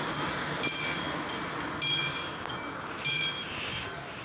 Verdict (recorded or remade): recorded